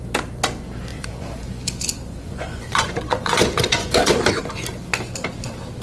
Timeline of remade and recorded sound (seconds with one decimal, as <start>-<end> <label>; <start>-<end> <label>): 0.0-0.9 recorded; 0.9-4.4 remade; 4.4-5.8 recorded